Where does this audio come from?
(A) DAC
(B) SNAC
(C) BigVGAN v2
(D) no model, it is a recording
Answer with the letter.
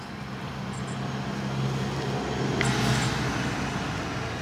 D